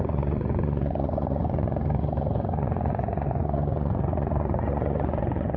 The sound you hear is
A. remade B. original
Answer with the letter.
A